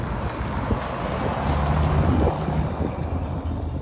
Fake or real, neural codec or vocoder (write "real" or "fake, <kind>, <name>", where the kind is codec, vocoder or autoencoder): real